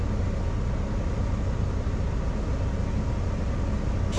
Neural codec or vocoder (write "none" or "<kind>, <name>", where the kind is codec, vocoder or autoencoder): none